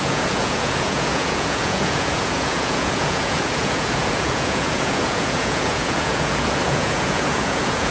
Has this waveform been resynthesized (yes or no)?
yes